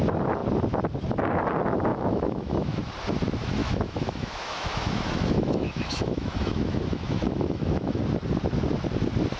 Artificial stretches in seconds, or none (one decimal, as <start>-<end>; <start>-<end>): 1.9-2.8; 3.6-8.0